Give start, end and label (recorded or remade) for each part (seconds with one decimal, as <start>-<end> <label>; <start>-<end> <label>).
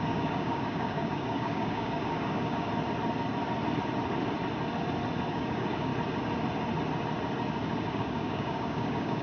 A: 0.0-2.7 remade; 2.7-5.3 recorded; 5.3-5.9 remade; 5.9-7.9 recorded; 7.9-9.2 remade